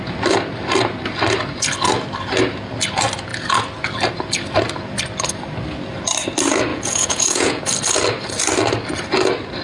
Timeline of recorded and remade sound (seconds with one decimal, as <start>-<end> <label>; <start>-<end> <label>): 0.0-6.7 recorded; 6.7-7.6 remade; 7.6-9.6 recorded